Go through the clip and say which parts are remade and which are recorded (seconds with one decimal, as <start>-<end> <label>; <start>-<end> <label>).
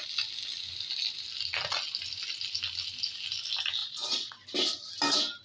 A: 0.0-3.8 recorded; 3.8-4.4 remade; 4.4-5.4 recorded